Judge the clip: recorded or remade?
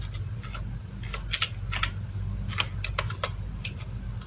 recorded